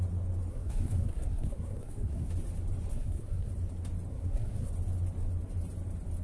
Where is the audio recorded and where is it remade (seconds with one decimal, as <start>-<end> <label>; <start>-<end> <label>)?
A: 0.0-0.5 recorded; 0.5-2.3 remade; 2.3-2.9 recorded; 2.9-3.5 remade; 3.5-4.1 recorded; 4.1-4.7 remade; 4.7-6.2 recorded